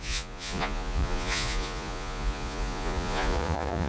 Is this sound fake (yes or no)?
yes